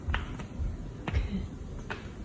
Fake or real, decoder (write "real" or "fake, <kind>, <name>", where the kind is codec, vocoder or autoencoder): real